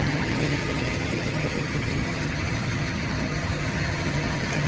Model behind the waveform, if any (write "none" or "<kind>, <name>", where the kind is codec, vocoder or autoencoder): vocoder, HiFi-GAN